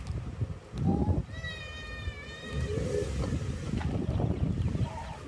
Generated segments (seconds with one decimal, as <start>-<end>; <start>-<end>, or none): none